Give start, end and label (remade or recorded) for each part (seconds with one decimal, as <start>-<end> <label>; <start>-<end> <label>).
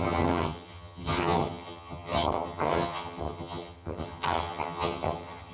0.0-5.5 remade